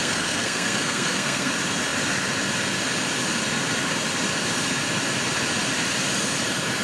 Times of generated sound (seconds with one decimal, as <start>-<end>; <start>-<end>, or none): 0.0-1.5